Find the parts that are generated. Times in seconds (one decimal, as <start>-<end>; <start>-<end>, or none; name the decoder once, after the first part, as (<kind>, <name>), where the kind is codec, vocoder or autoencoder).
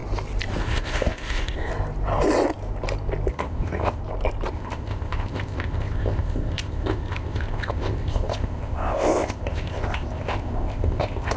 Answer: 0.6-1.7 (codec, ZipCodec); 3.3-4.0; 4.5-11.4